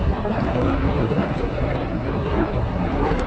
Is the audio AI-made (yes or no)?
yes